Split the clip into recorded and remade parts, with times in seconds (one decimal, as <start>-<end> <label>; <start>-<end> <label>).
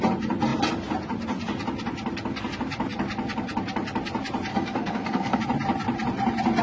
0.0-4.5 recorded; 4.5-5.4 remade; 5.4-6.6 recorded